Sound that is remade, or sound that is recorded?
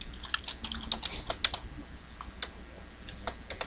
recorded